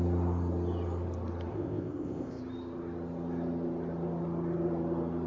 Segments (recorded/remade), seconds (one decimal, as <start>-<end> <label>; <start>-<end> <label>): 0.0-1.5 recorded; 1.5-2.4 remade; 2.4-5.3 recorded